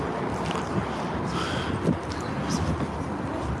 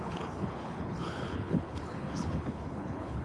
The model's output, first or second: second